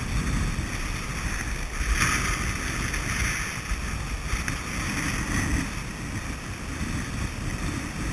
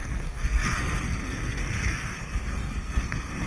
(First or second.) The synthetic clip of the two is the second